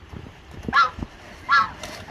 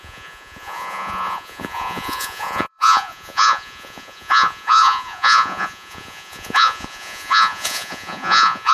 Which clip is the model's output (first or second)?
second